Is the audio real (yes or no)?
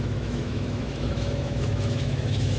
no